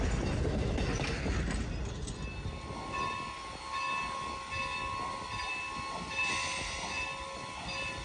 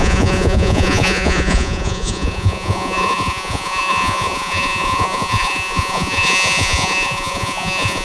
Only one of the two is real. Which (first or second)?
first